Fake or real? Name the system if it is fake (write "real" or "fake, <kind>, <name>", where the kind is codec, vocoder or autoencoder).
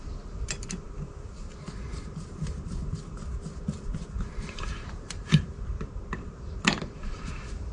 fake, vocoder, BigVGAN v2